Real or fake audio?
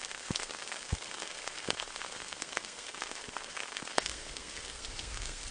fake